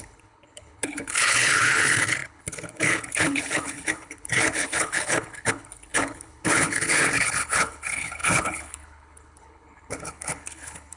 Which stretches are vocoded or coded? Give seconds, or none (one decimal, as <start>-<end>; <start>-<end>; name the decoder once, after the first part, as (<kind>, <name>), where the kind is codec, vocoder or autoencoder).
0.0-11.0 (codec, HILCodec)